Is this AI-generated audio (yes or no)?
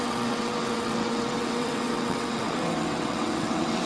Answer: yes